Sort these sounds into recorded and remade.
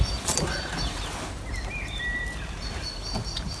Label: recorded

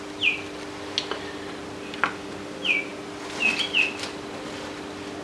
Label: recorded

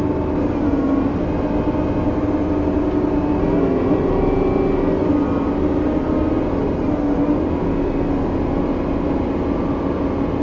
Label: recorded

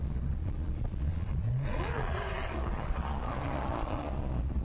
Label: remade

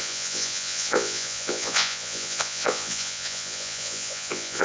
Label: remade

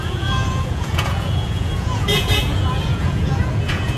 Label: remade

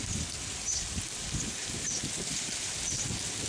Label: recorded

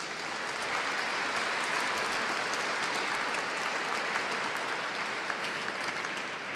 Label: recorded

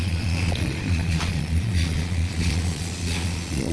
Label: remade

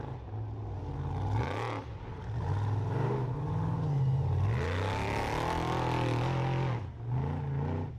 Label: recorded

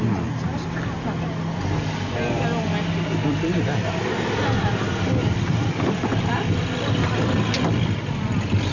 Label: recorded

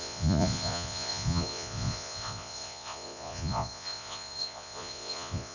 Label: remade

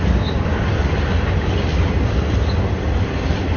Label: recorded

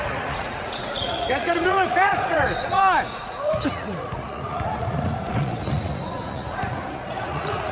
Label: remade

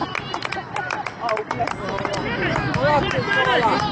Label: recorded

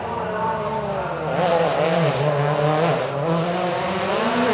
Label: recorded